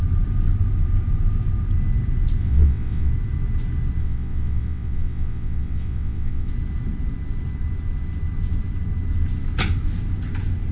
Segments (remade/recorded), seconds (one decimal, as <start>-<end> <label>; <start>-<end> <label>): 0.0-2.4 recorded; 2.4-3.1 remade; 3.1-4.0 recorded; 4.0-6.5 remade; 6.5-10.7 recorded